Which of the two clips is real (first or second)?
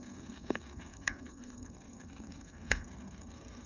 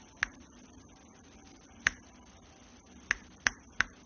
second